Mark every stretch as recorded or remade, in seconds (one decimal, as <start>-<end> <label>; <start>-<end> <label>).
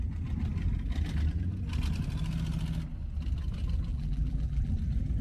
0.0-3.9 recorded; 3.9-4.7 remade; 4.7-5.2 recorded